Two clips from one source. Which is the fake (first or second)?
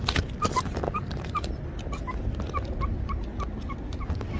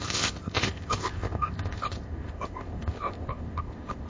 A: second